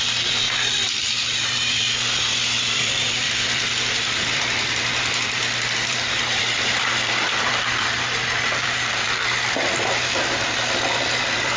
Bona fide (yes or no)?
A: no